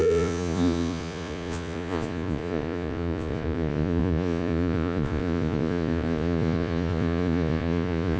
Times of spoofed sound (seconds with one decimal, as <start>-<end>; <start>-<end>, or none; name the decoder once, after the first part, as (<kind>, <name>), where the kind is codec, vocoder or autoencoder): 0.0-8.2 (vocoder, Vocos)

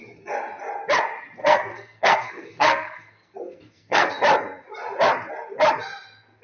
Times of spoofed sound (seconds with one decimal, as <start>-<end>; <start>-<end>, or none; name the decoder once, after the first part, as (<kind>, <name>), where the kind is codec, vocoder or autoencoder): 1.4-4.1 (codec, SNAC)

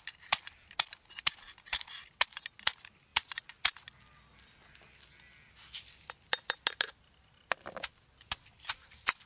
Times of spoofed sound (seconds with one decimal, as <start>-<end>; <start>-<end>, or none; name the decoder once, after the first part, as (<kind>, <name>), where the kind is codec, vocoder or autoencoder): none

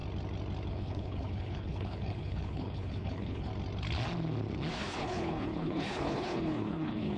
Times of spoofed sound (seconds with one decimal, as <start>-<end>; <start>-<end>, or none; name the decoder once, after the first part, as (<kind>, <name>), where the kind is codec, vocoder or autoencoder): 0.7-3.5 (codec, HILCodec); 4.7-7.2

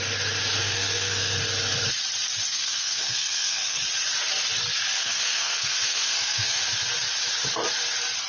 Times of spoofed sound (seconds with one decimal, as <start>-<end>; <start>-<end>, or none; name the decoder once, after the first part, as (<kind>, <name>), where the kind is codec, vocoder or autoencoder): 0.6-1.4 (codec, SNAC); 2.5-3.8; 5.0-6.6